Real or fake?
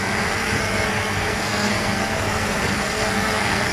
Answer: fake